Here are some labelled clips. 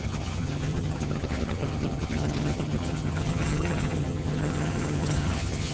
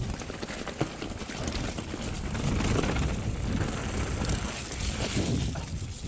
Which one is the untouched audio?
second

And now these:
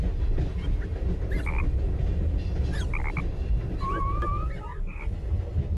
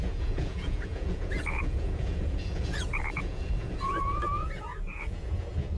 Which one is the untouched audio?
first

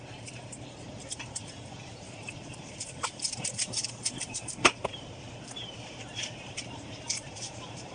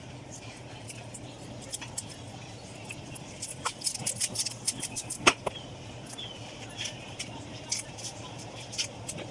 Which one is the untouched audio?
second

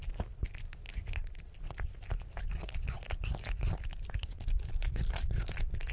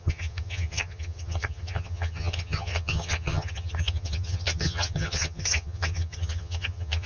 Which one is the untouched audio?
first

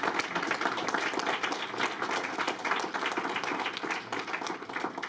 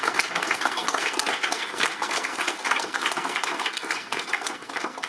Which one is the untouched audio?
first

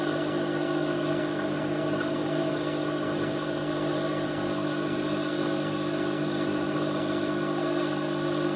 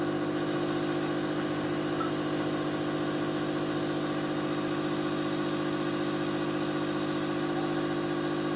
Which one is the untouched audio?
second